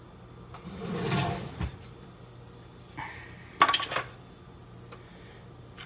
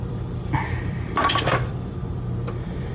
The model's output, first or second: second